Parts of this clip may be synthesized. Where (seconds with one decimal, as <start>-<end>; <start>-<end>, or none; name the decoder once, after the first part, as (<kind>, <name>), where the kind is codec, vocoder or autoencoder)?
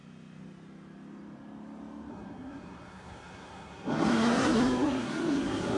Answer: 2.1-5.8 (codec, SNAC)